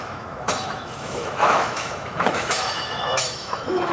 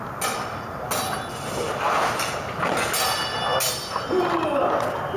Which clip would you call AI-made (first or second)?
first